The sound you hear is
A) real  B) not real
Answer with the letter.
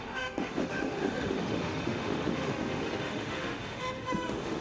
B